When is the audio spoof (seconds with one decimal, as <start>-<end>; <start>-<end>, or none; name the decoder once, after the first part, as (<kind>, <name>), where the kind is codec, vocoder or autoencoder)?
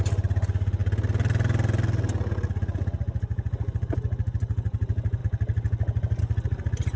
none